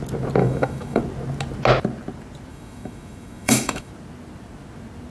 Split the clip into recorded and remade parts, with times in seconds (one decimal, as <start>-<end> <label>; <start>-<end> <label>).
0.0-0.4 recorded; 0.4-1.0 remade; 1.0-2.5 recorded; 2.5-3.9 remade; 3.9-5.1 recorded